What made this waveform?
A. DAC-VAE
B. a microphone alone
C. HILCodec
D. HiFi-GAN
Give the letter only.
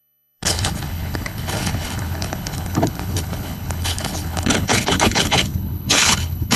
C